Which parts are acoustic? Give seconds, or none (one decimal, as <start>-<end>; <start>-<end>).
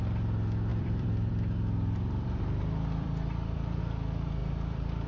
0.0-0.7; 3.8-4.4